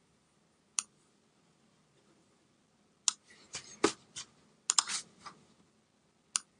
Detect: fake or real real